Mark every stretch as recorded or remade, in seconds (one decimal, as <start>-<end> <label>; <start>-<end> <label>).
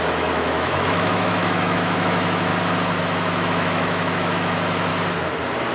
0.0-2.5 remade; 2.5-3.0 recorded; 3.0-4.9 remade; 4.9-5.7 recorded